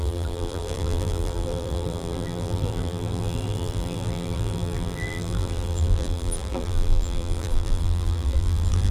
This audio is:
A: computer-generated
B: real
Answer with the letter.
A